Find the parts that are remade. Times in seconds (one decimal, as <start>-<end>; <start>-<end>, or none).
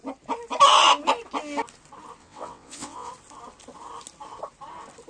2.2-3.1